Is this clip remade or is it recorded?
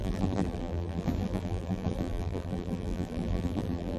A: remade